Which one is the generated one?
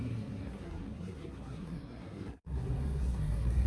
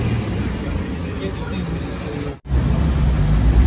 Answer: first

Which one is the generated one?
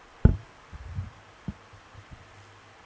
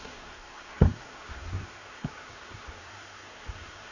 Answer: second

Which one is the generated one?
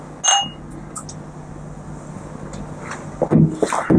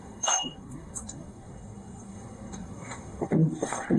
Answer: second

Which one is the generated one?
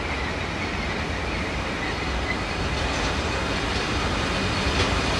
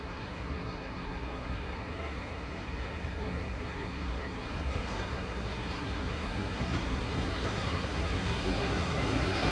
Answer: second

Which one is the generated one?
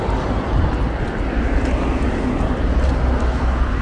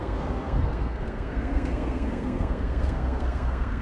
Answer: second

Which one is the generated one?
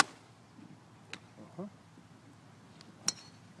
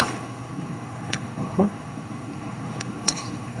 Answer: second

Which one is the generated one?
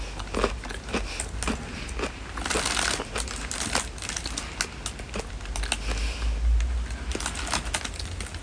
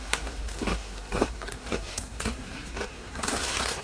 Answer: second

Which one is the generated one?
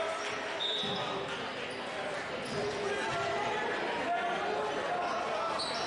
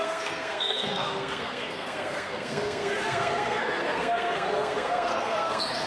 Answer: second